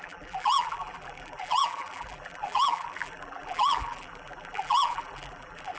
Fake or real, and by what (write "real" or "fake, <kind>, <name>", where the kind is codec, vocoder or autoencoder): fake, vocoder, BigVGAN v2